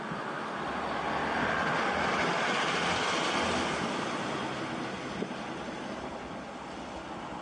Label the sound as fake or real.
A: real